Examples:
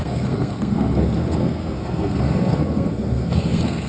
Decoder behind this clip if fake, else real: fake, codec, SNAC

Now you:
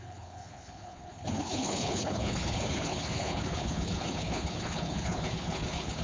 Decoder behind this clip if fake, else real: fake, codec, HILCodec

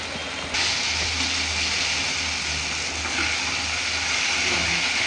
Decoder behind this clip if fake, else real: real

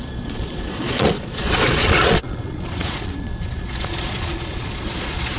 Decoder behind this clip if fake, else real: fake, vocoder, Vocos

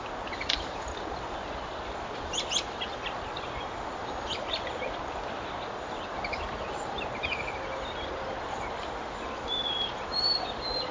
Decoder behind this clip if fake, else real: real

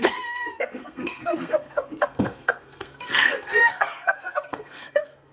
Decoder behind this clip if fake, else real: fake, codec, SNAC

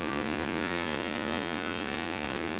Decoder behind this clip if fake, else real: fake, vocoder, Vocos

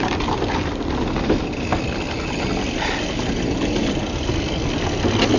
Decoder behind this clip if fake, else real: real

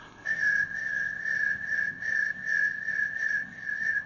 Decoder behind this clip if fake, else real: fake, codec, ZipCodec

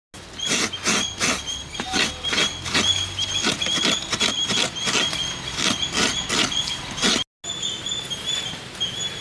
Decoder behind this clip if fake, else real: real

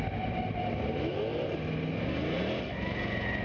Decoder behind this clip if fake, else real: real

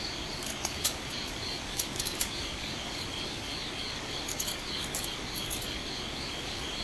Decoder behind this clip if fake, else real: fake, codec, DAC